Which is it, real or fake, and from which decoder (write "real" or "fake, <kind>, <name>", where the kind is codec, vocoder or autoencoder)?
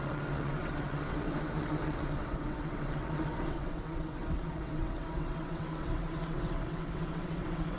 fake, vocoder, WaveNeXt